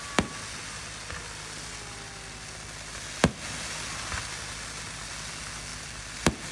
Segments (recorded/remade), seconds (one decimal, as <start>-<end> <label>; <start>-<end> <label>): 0.0-6.5 recorded